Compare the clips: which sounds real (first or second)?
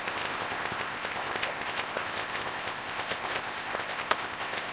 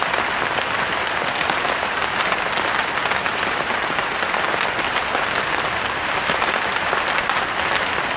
second